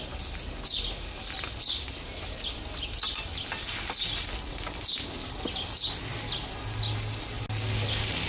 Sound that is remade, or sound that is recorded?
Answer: recorded